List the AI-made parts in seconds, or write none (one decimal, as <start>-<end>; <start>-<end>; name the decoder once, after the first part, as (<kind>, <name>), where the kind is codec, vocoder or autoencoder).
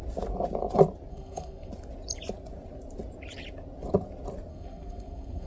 1.1-1.7 (codec, SNAC); 4.5-5.5